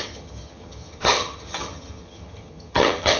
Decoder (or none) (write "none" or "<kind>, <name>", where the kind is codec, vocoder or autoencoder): vocoder, HiFi-GAN